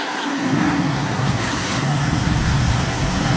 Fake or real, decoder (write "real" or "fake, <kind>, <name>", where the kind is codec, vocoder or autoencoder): fake, codec, SNAC